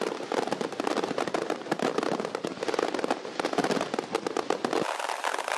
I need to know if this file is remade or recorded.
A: recorded